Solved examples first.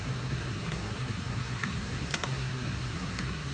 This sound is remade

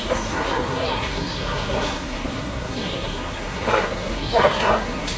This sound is remade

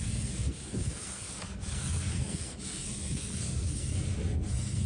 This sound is remade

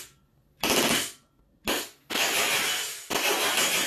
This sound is recorded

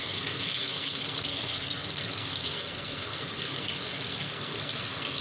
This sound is remade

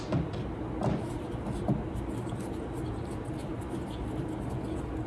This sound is recorded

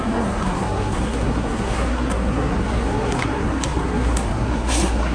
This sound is remade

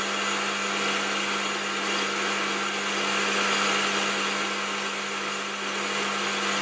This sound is recorded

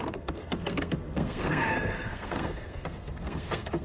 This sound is remade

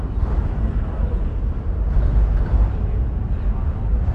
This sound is recorded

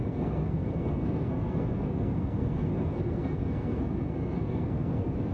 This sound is remade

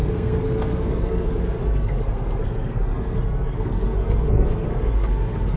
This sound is remade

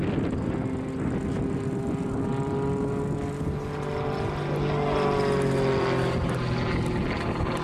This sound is recorded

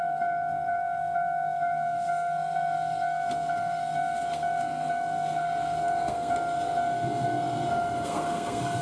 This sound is remade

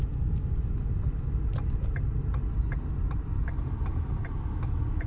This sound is recorded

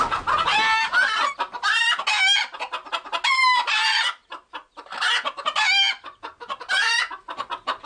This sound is recorded